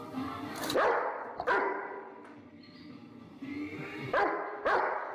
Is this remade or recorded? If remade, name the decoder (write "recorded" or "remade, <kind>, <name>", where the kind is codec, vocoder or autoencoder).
remade, vocoder, BigVGAN v2